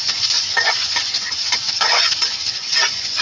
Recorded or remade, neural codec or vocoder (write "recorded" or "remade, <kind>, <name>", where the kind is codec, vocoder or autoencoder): remade, vocoder, Vocos